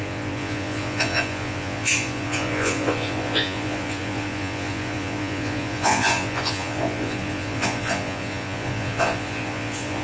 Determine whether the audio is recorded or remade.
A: remade